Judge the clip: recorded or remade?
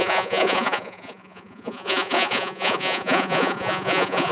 remade